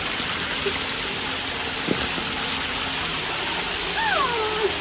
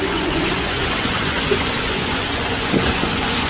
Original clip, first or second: first